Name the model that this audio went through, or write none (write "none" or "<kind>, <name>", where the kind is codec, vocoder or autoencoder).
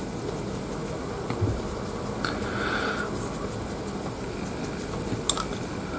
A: none